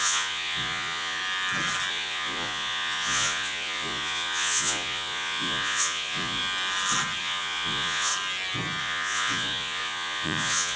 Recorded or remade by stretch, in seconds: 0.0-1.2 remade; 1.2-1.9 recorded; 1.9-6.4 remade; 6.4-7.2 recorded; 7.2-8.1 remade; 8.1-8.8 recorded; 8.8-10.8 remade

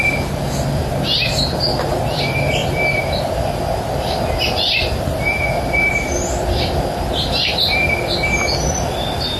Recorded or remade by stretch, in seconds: 0.0-9.4 recorded

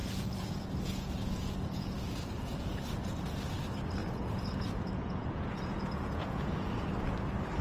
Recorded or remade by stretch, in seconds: 0.0-3.3 remade; 3.3-4.0 recorded; 4.0-6.7 remade; 6.7-7.6 recorded

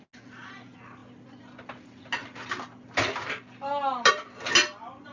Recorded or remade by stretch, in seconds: 0.0-5.1 recorded